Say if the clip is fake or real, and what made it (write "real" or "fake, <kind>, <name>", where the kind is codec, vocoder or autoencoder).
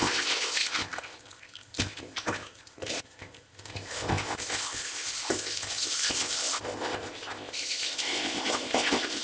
fake, codec, ZipCodec